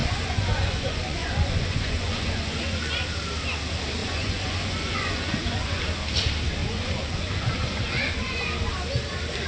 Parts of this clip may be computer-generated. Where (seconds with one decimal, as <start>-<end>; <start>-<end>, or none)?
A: 0.0-2.9; 4.0-5.8; 6.6-8.4